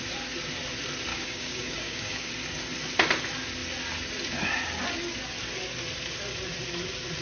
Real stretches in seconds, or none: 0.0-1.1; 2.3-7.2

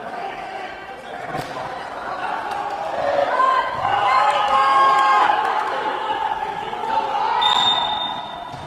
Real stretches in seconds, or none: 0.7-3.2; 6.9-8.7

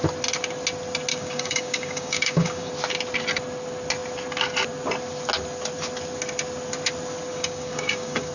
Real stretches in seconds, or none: 0.0-1.1; 2.7-7.3